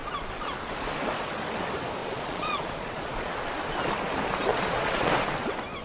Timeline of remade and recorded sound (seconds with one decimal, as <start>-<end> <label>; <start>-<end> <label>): 0.0-2.0 recorded; 2.0-3.3 remade; 3.3-4.5 recorded; 4.5-5.1 remade; 5.1-5.8 recorded